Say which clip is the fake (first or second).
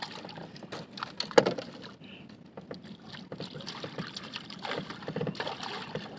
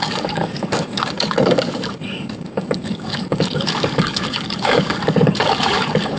second